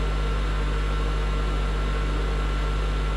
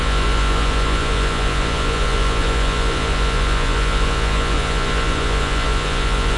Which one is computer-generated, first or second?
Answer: second